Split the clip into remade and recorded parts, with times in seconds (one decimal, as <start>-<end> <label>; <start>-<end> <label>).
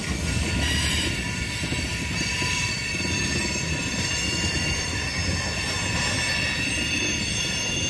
0.0-0.9 recorded; 0.9-5.1 remade; 5.1-6.7 recorded; 6.7-7.9 remade